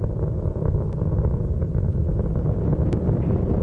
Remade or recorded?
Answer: recorded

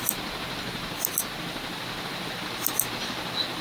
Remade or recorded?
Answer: recorded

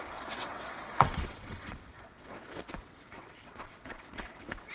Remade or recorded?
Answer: remade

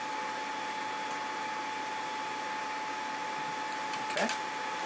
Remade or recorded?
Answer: recorded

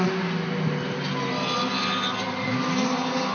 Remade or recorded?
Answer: recorded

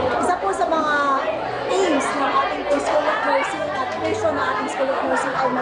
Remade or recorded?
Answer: recorded